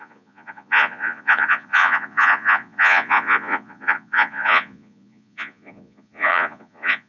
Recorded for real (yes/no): no